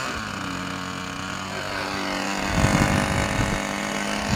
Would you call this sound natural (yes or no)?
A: yes